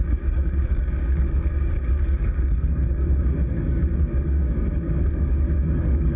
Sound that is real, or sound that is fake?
fake